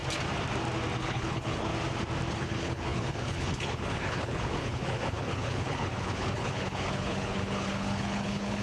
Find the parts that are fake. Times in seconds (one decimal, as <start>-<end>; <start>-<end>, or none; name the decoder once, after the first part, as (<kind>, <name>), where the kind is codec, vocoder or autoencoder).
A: 1.0-1.7 (codec, HILCodec); 2.3-8.6